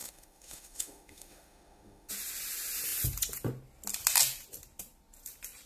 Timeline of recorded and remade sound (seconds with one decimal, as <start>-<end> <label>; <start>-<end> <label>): 0.0-2.1 remade; 2.1-5.7 recorded